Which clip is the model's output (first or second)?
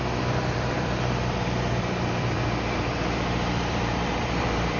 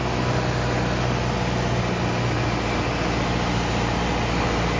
first